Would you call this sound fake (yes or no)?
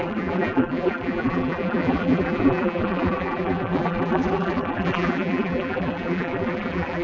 yes